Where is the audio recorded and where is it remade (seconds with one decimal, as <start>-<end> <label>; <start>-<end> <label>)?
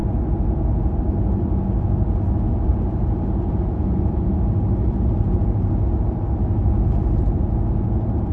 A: 0.0-2.7 recorded; 2.7-6.2 remade; 6.2-8.3 recorded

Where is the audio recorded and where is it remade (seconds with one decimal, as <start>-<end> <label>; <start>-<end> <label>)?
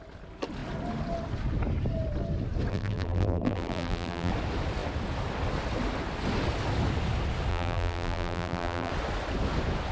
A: 0.0-2.7 recorded; 2.7-4.3 remade; 4.3-7.5 recorded; 7.5-8.9 remade; 8.9-9.9 recorded